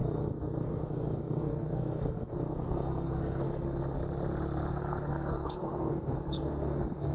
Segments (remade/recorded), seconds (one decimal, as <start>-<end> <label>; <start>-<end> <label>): 0.0-4.0 remade; 4.0-4.7 recorded; 4.7-7.1 remade